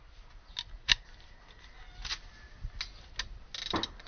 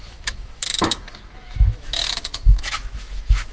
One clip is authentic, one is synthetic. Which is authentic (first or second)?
first